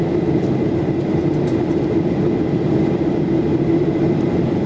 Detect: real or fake real